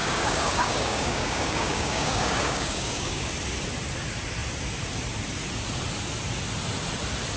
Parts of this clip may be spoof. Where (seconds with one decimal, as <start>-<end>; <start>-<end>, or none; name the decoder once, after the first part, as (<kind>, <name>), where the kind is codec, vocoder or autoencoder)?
0.0-3.3 (codec, DAC)